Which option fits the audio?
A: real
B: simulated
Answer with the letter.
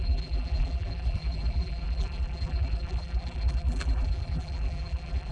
B